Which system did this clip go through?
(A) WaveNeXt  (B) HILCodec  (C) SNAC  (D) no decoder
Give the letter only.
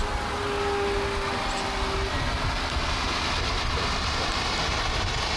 D